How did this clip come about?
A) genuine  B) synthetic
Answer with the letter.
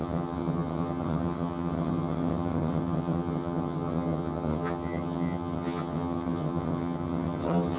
B